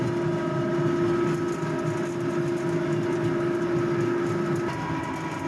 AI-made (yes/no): no